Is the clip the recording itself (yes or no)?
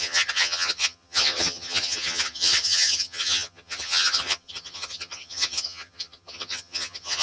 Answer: no